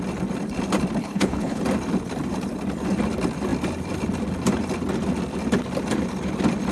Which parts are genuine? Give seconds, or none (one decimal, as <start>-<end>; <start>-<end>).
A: 0.0-1.0; 1.6-6.7